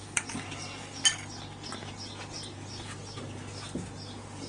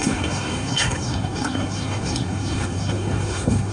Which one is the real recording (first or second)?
first